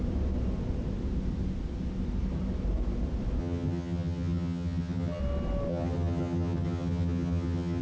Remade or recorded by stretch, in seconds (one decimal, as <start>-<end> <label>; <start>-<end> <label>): 0.0-3.4 recorded; 3.4-5.2 remade; 5.2-5.7 recorded; 5.7-7.8 remade